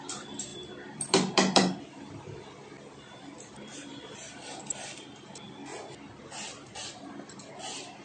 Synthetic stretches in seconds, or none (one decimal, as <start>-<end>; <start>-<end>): 0.5-2.2; 3.9-4.6